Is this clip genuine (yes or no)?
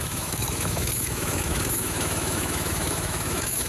no